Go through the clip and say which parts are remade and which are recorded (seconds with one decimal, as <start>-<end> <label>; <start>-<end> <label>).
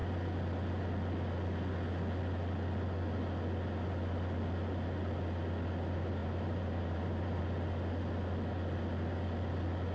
0.0-6.2 recorded; 6.2-7.4 remade; 7.4-9.9 recorded